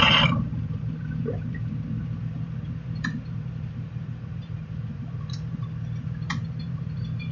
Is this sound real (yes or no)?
no